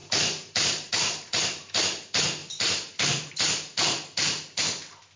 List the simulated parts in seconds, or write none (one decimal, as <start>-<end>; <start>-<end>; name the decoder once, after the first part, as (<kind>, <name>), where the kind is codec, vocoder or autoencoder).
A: 0.0-0.9 (vocoder, BigVGAN v2)